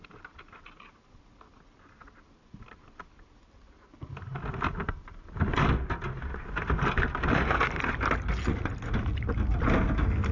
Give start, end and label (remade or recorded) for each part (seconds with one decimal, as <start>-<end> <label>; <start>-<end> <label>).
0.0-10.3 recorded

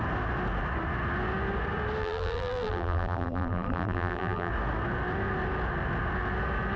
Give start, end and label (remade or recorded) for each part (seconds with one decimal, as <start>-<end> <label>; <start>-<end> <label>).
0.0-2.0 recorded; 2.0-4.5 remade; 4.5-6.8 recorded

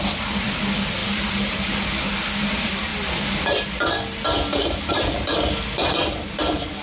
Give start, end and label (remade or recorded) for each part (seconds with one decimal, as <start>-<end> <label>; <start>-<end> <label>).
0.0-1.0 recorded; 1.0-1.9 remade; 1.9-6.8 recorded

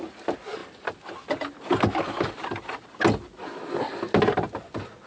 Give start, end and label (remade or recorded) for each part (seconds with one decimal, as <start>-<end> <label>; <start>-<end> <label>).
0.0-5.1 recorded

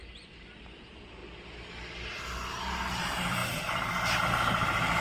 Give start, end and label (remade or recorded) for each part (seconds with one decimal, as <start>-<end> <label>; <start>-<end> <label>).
0.0-1.2 remade; 1.2-2.6 recorded; 2.6-5.0 remade

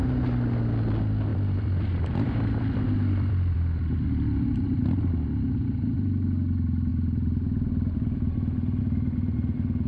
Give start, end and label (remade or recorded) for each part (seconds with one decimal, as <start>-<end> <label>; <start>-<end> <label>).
0.0-1.3 recorded; 1.3-5.1 remade; 5.1-6.9 recorded; 6.9-8.8 remade; 8.8-9.9 recorded